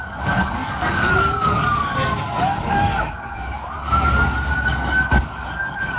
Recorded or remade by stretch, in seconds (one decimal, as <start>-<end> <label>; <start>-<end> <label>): 0.0-6.0 remade

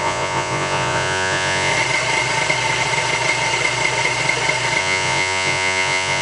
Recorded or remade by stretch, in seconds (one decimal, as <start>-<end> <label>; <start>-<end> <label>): 0.0-1.7 remade; 1.7-4.8 recorded; 4.8-6.2 remade

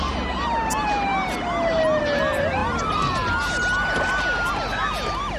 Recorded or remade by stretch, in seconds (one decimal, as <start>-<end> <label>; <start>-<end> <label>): 0.0-5.4 recorded

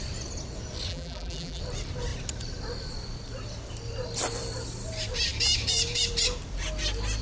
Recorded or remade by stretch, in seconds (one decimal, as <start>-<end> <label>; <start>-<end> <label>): 0.0-0.9 recorded; 0.9-1.6 remade; 1.6-7.2 recorded